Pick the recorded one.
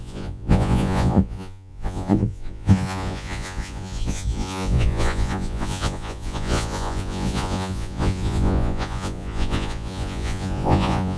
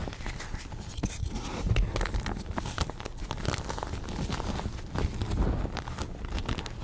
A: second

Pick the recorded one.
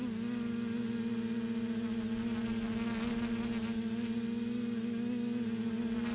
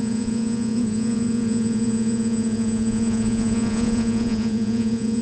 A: first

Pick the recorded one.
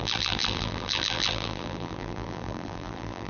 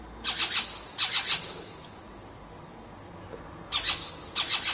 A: second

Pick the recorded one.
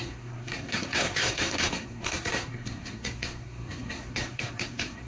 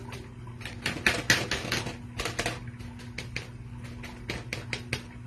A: second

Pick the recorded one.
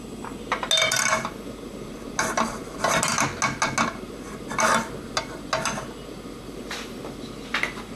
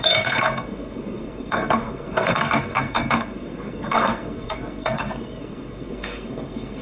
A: first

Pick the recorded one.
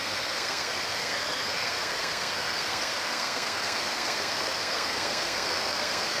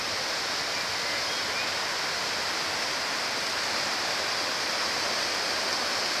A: second